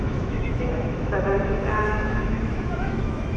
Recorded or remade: remade